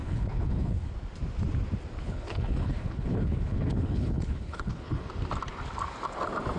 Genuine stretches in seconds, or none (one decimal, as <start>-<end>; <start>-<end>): 0.9-2.0; 5.1-6.6